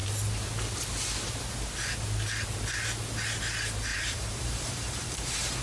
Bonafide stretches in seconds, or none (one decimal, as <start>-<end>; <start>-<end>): 0.0-3.9